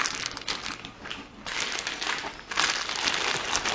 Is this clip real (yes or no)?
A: yes